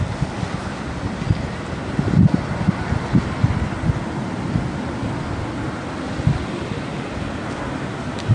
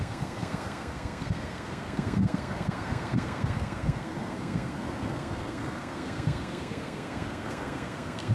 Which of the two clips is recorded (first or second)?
first